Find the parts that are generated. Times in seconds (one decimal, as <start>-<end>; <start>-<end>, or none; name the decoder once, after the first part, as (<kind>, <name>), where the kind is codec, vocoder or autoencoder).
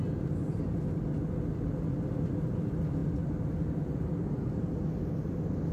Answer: none